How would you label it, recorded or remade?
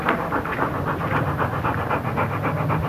recorded